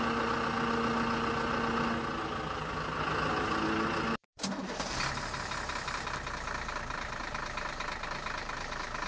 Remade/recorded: recorded